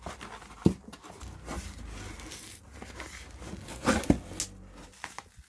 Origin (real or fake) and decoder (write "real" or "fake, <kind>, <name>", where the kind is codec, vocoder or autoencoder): real